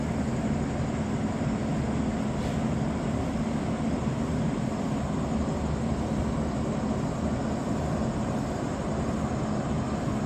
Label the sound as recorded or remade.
recorded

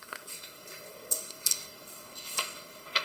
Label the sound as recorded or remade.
remade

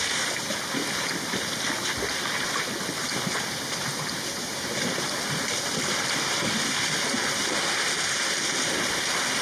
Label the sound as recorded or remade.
recorded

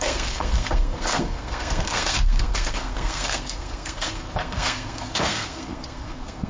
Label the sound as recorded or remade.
remade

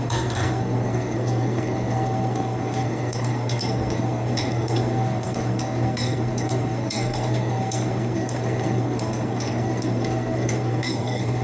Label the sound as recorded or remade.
remade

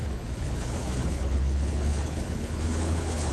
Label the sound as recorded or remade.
remade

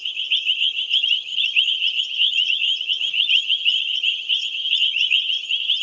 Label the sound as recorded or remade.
remade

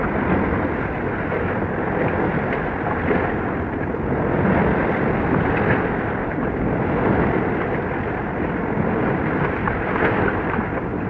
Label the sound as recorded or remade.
recorded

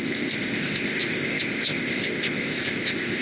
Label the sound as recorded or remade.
remade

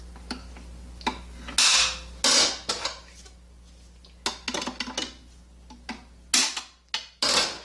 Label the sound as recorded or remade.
recorded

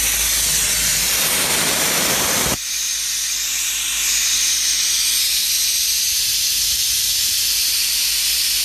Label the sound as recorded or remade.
recorded